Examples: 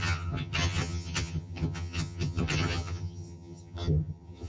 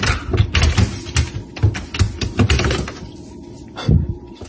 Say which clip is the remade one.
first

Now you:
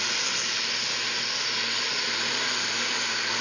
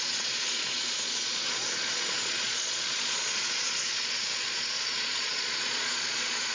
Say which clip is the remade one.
second